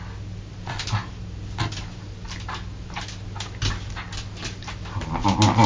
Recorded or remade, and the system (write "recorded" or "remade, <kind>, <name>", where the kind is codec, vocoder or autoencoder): recorded